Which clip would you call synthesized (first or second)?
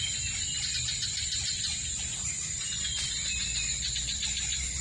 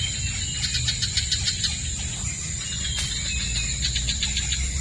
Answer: first